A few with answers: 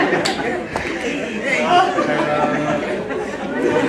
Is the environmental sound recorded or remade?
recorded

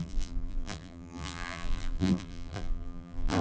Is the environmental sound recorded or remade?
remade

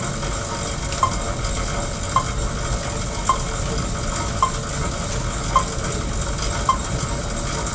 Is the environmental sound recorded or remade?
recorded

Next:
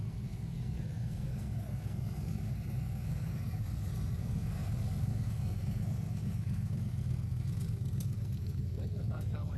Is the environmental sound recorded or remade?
remade